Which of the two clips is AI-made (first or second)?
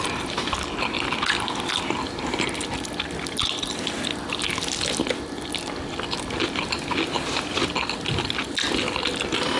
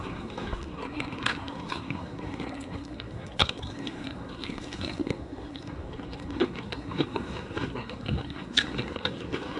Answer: second